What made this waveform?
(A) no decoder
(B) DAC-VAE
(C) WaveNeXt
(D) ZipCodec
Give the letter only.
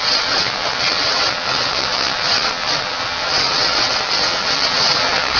C